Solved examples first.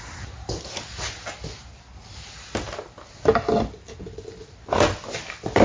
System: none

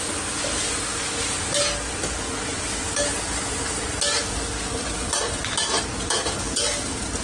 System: none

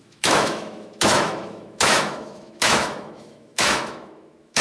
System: autoencoder, DAC-VAE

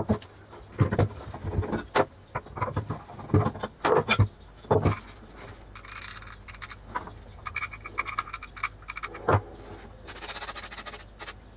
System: none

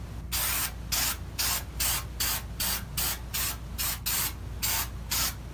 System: none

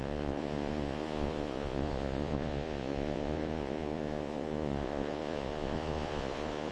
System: vocoder, Vocos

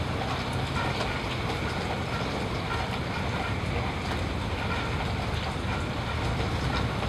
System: none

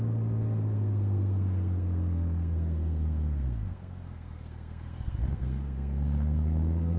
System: codec, SNAC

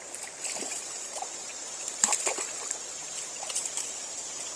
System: vocoder, BigVGAN v2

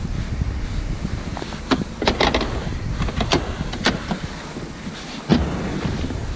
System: none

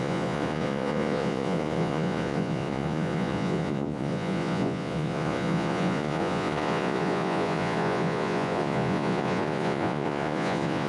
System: vocoder, Vocos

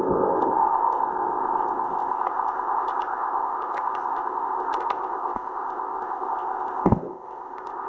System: codec, ZipCodec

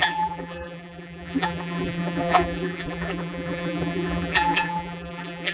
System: vocoder, BigVGAN v2